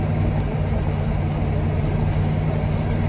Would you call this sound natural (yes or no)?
yes